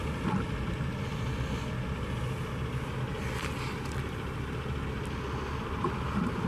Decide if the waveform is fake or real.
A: real